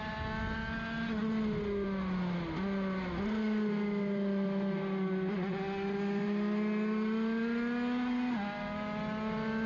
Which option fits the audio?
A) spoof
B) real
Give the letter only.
B